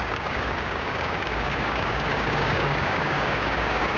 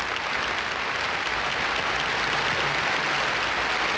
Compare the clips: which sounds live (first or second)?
second